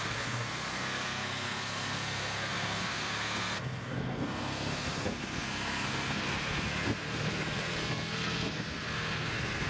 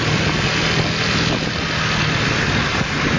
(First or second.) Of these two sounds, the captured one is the second